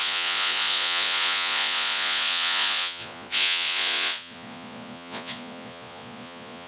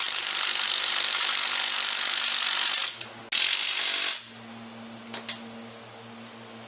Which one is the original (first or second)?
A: second